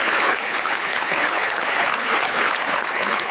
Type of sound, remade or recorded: remade